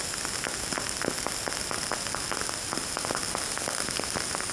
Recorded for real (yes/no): yes